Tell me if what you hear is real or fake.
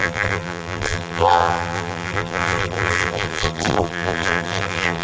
fake